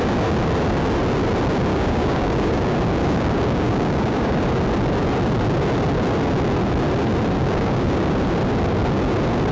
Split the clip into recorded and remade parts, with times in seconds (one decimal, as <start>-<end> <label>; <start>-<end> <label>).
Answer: 0.0-1.7 recorded; 1.7-2.6 remade; 2.6-3.0 recorded; 3.0-4.4 remade; 4.4-7.4 recorded; 7.4-8.1 remade; 8.1-9.5 recorded

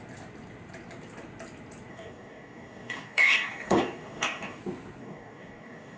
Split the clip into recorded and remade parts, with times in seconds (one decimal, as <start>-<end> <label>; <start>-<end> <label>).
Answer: 0.0-1.9 recorded; 1.9-4.6 remade; 4.6-5.0 recorded; 5.0-6.0 remade

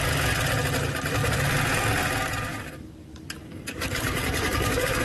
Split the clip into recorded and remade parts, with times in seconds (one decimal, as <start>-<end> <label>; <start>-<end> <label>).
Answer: 0.0-2.5 recorded; 2.5-5.0 remade

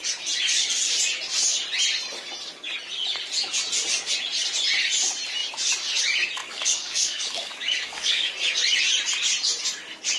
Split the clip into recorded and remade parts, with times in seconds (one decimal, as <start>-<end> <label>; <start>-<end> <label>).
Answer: 0.0-6.4 recorded; 6.4-8.3 remade; 8.3-10.2 recorded

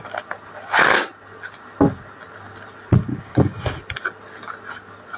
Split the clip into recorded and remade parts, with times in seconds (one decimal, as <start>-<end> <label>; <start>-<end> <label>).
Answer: 0.0-3.1 recorded; 3.1-3.6 remade; 3.6-5.2 recorded

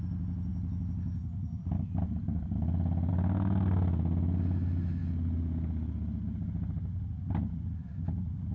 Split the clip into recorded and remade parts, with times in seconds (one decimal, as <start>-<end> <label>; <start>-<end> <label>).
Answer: 0.0-8.5 recorded